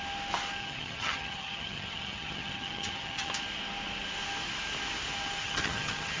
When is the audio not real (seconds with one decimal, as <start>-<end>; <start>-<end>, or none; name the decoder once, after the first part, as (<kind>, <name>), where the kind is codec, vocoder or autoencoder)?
0.6-3.3 (vocoder, HiFi-GAN); 5.4-6.2